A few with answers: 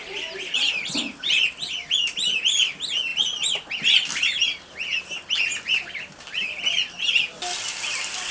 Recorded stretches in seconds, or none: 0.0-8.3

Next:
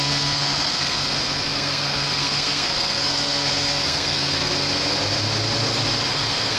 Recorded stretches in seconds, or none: 4.5-6.1

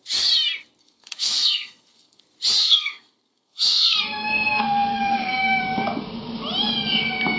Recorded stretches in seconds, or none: 0.0-0.8; 2.2-2.6; 5.6-7.4